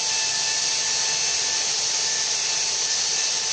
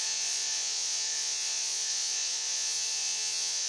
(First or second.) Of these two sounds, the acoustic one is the first